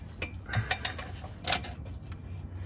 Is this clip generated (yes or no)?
no